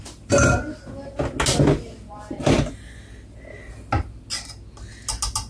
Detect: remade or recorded recorded